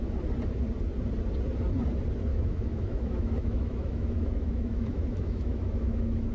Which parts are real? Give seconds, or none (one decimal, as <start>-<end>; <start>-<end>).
0.0-2.3